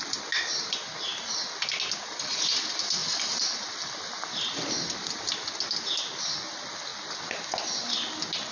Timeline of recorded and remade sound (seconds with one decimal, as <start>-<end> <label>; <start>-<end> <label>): 0.0-8.5 recorded